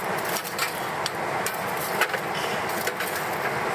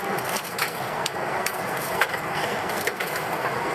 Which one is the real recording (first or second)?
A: first